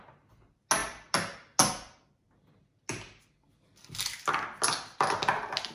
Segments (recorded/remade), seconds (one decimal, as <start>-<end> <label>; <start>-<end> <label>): 0.0-5.7 recorded